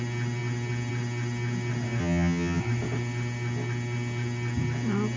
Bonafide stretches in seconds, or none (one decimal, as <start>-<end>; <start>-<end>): 0.0-2.0; 2.6-5.2